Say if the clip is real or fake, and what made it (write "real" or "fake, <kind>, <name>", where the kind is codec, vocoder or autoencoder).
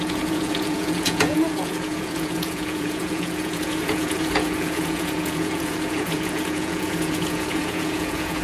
fake, vocoder, Vocos